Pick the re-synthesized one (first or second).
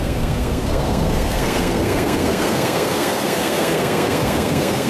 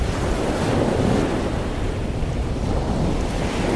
first